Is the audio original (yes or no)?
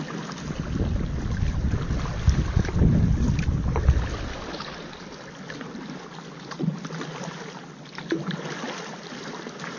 yes